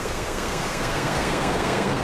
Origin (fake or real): fake